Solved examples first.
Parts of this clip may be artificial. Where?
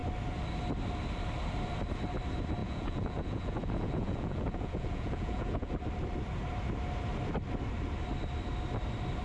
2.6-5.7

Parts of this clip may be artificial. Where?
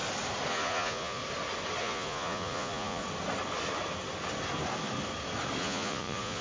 0.5-1.2; 1.8-3.0; 5.6-6.4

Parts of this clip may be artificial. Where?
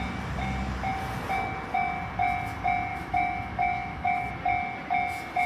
2.9-4.3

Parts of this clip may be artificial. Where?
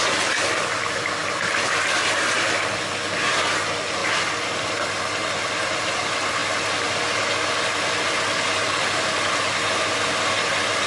1.2-1.7; 4.0-4.7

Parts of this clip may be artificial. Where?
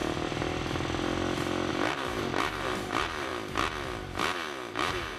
1.7-3.3; 4.7-5.2